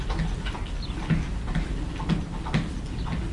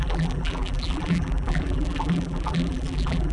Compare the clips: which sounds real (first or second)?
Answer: first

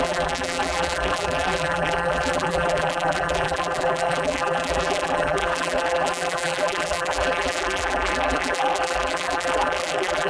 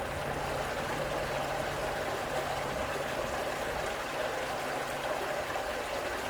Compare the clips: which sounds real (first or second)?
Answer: second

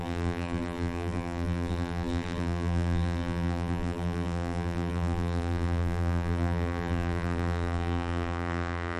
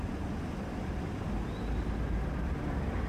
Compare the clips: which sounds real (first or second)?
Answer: second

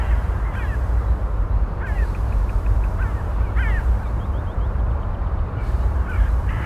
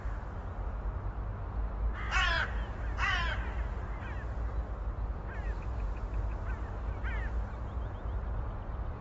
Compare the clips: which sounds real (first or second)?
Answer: second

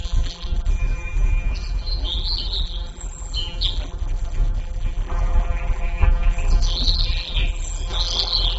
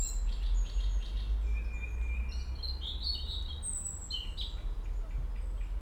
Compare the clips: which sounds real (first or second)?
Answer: second